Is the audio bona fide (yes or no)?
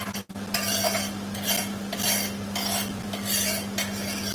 yes